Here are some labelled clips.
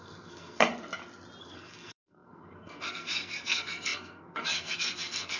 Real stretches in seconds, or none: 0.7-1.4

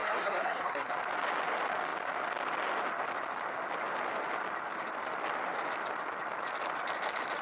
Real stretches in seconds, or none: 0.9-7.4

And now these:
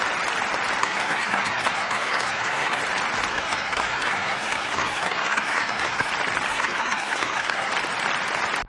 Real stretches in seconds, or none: 0.0-0.8; 2.8-3.3; 6.1-6.5; 7.7-8.7